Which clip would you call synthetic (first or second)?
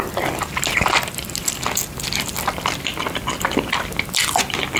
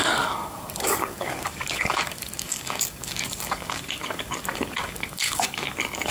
second